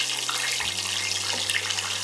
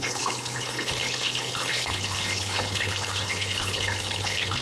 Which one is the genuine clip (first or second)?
first